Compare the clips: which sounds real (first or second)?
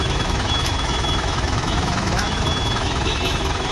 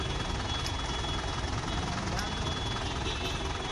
second